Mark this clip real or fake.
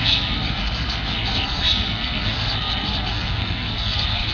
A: fake